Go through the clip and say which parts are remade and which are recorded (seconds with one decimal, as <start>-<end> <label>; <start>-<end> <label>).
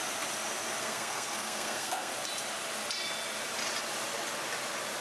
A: 0.0-0.8 recorded; 0.8-2.1 remade; 2.1-5.0 recorded